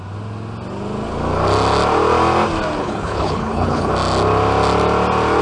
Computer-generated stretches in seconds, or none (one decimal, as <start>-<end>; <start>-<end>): 2.8-3.9